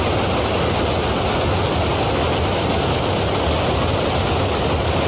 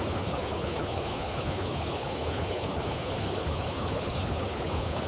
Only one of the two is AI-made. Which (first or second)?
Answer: second